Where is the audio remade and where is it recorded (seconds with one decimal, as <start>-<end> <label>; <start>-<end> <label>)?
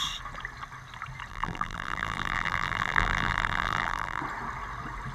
0.0-1.3 recorded; 1.3-4.2 remade; 4.2-5.1 recorded